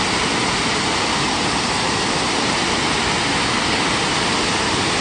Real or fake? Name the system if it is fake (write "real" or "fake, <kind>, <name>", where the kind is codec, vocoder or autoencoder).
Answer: real